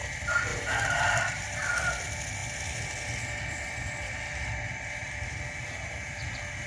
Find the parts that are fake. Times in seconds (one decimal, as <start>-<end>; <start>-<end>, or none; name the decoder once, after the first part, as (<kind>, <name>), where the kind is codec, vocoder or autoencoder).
0.5-1.1 (vocoder, BigVGAN v2)